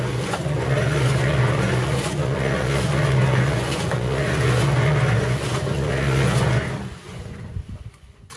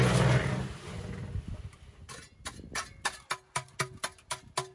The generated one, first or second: first